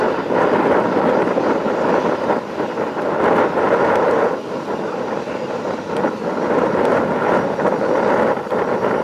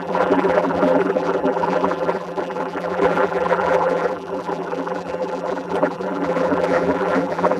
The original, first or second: first